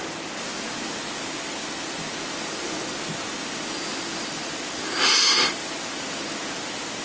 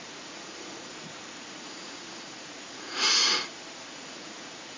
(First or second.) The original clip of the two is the first